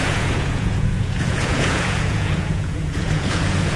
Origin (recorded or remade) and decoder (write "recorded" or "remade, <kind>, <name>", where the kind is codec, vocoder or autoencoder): remade, vocoder, Vocos